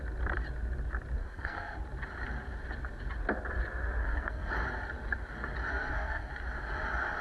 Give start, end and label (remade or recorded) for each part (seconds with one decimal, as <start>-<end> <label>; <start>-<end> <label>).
0.0-1.2 recorded; 1.2-1.8 remade; 1.8-4.0 recorded; 4.0-4.5 remade; 4.5-5.7 recorded; 5.7-6.3 remade; 6.3-7.2 recorded